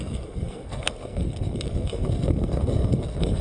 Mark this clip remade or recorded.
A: remade